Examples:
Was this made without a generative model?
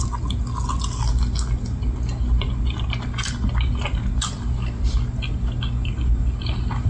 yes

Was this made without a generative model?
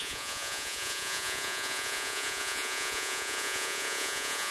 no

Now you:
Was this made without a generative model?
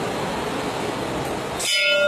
yes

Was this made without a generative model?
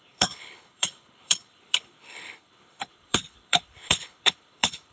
no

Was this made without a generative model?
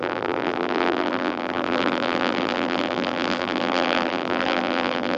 no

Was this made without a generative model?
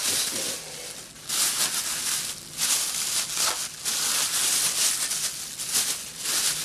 yes